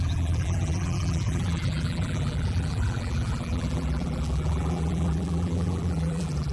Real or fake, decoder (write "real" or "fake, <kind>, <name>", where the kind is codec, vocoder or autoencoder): fake, vocoder, BigVGAN v2